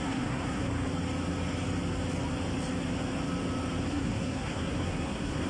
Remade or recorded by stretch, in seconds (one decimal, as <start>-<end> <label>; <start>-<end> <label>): 0.0-0.7 remade; 0.7-3.9 recorded; 3.9-5.5 remade